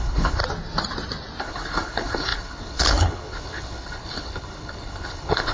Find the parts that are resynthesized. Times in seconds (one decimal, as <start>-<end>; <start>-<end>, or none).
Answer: 0.0-0.4; 1.4-5.5